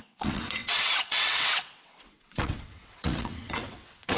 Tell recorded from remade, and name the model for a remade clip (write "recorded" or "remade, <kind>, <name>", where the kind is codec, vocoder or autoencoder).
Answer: remade, vocoder, WaveNeXt